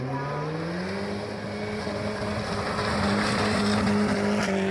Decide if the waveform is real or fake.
real